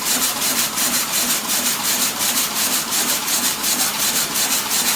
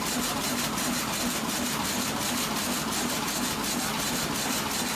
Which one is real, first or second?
second